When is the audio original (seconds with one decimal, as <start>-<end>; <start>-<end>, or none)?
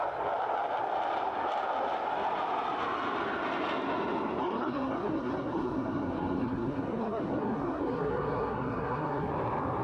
0.0-4.4; 9.3-9.8